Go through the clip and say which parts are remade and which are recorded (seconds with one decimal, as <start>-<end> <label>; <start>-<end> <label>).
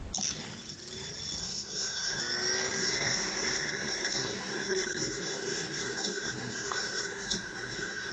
0.0-1.4 recorded; 1.4-2.2 remade; 2.2-2.8 recorded; 2.8-8.1 remade